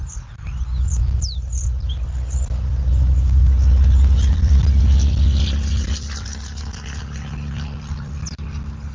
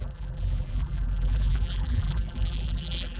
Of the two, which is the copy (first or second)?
second